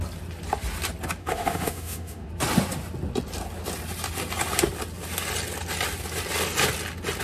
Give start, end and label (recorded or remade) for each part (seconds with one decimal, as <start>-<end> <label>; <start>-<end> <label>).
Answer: 0.0-1.2 recorded; 1.2-2.3 remade; 2.3-7.2 recorded